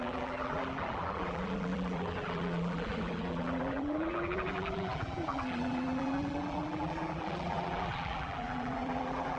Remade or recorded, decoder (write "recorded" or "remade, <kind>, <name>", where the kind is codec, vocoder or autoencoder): remade, vocoder, BigVGAN v2